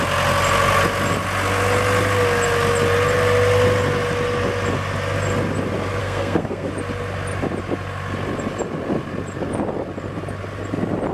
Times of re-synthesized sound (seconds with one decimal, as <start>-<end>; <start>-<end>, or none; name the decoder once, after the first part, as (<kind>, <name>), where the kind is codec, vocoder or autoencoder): 6.0-6.7 (codec, SNAC)